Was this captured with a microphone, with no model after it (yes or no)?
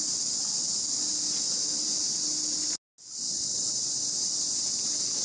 yes